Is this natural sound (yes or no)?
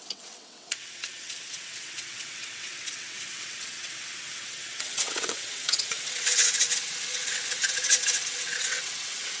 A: no